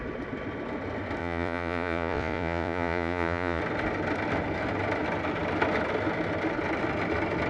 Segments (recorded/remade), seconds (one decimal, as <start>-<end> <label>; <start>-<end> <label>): 0.0-1.2 recorded; 1.2-3.6 remade; 3.6-7.5 recorded